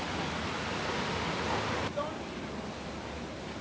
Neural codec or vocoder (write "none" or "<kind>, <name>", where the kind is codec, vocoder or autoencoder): none